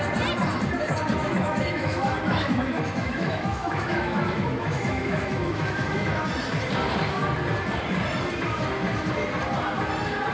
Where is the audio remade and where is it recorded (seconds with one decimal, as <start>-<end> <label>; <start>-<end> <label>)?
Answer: 0.0-1.2 recorded; 1.2-6.2 remade; 6.2-10.3 recorded